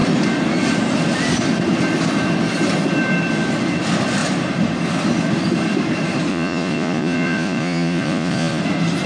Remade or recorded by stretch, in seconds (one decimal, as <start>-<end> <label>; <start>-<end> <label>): 0.0-6.3 recorded; 6.3-8.6 remade; 8.6-9.1 recorded